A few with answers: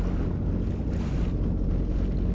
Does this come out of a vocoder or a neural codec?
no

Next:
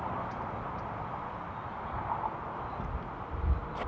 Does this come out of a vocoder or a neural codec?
yes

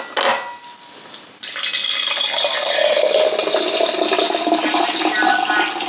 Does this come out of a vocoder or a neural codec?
no